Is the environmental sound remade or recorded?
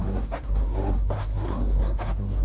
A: remade